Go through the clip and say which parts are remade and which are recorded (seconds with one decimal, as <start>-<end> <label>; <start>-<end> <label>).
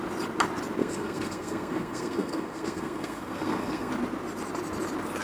0.0-0.8 recorded; 0.8-3.9 remade; 3.9-5.2 recorded